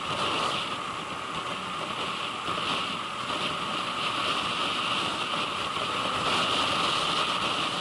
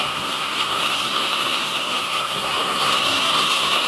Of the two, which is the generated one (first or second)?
second